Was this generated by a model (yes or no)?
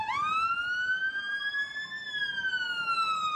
no